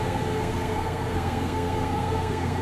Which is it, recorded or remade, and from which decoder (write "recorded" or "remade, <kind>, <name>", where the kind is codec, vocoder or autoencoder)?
remade, codec, SNAC